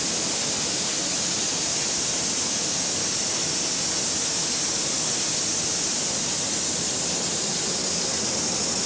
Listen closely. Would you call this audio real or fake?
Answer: real